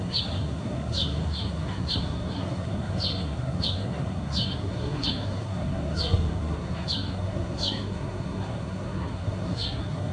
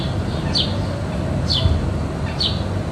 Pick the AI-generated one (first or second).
first